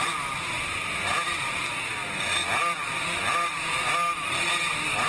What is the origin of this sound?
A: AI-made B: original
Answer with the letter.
B